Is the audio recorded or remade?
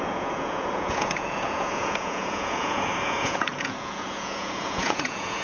remade